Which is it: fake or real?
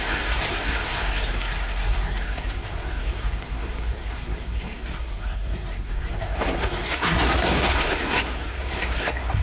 fake